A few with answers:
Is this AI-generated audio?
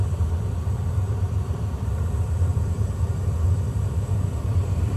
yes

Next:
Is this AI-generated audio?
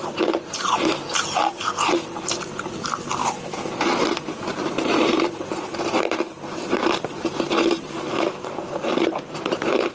yes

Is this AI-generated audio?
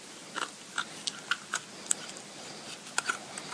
no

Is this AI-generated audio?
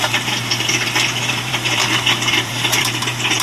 yes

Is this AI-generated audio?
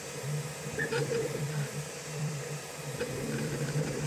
yes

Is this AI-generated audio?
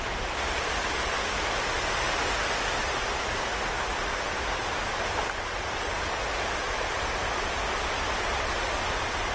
no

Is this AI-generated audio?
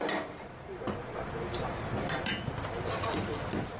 no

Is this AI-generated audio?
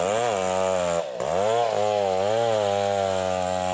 no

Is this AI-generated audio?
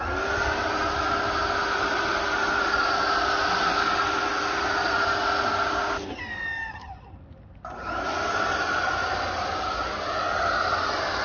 no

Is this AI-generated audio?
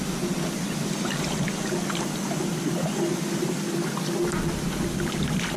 no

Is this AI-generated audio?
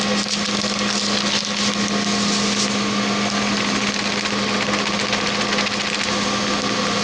no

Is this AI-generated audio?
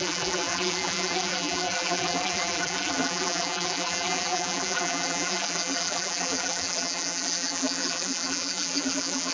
yes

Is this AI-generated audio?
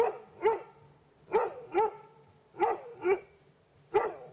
no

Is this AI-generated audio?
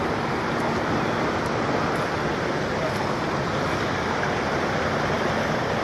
no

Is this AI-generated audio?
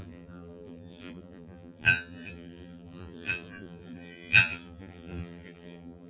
yes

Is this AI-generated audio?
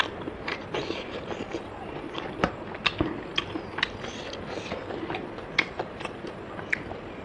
no